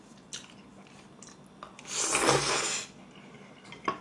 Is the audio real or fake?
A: real